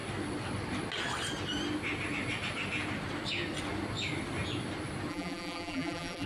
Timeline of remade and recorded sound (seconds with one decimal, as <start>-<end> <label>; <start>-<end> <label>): 0.0-5.1 recorded; 5.1-6.3 remade

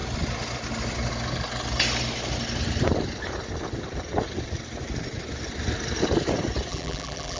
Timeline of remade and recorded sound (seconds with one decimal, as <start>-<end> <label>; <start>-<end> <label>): 0.0-6.7 recorded; 6.7-7.4 remade

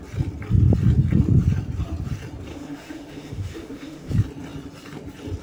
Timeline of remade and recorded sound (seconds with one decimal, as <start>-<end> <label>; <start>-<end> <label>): 0.0-2.5 recorded; 2.5-4.1 remade; 4.1-5.4 recorded

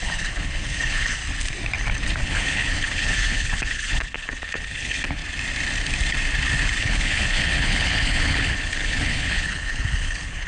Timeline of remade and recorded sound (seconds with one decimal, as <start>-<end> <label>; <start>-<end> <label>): 0.0-1.2 remade; 1.2-2.2 recorded; 2.2-5.2 remade; 5.2-6.8 recorded; 6.8-10.5 remade

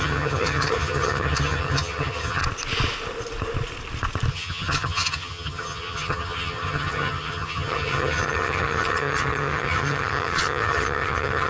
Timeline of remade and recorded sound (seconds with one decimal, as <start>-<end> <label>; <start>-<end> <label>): 0.0-2.4 remade; 2.4-4.3 recorded; 4.3-11.5 remade

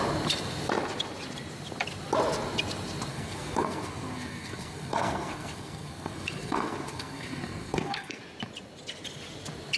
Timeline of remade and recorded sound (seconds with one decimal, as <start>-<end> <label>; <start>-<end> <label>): 0.0-3.1 recorded; 3.1-8.2 remade; 8.2-9.8 recorded